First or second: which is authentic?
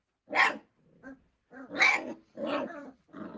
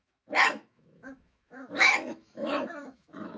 first